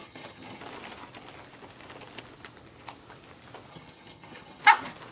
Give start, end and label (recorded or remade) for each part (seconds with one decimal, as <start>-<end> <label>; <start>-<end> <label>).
0.0-0.6 remade; 0.6-3.7 recorded; 3.7-4.6 remade; 4.6-5.1 recorded